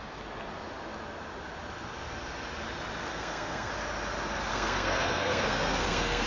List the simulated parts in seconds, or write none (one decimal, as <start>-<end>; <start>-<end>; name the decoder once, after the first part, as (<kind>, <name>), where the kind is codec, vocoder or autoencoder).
3.1-3.7 (codec, SNAC); 4.5-6.3